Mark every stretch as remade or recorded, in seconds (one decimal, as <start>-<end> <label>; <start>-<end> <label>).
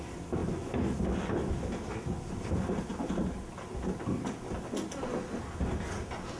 0.0-6.4 recorded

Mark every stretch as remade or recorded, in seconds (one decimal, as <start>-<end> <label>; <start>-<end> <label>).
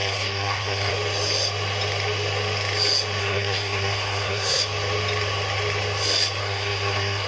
0.0-0.9 remade; 0.9-3.2 recorded; 3.2-4.6 remade; 4.6-6.4 recorded; 6.4-7.3 remade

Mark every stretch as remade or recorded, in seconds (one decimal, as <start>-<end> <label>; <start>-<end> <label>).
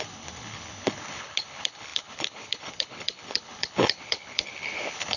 0.0-5.2 remade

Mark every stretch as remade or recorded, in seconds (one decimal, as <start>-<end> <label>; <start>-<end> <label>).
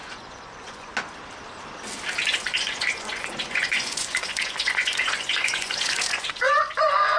0.0-0.9 remade; 0.9-2.3 recorded; 2.3-7.2 remade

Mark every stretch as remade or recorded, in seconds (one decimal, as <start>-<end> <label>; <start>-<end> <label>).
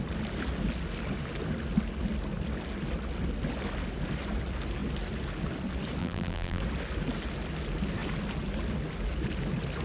0.0-6.0 recorded; 6.0-6.6 remade; 6.6-9.8 recorded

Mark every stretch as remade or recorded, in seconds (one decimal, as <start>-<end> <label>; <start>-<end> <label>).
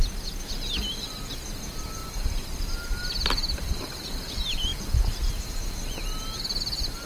0.0-7.1 recorded